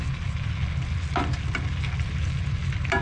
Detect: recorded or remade recorded